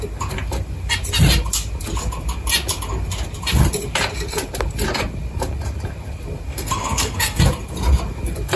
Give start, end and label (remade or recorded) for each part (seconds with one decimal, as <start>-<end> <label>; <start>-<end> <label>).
0.0-6.5 recorded; 6.5-7.4 remade; 7.4-8.6 recorded